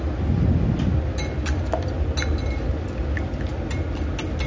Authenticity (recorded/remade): recorded